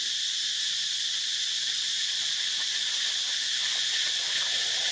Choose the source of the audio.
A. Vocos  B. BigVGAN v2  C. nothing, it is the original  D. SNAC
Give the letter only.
C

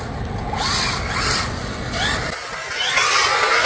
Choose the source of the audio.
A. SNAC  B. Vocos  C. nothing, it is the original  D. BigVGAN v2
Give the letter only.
C